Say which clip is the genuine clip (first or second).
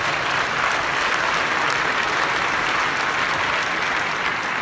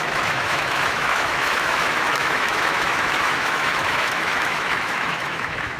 first